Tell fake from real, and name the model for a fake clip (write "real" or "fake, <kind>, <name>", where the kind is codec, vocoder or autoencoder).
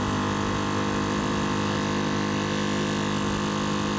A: real